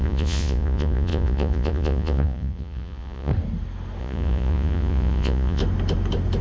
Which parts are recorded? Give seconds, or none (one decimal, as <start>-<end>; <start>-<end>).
3.3-4.0; 5.6-6.4